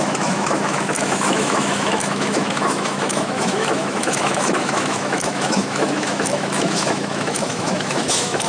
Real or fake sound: fake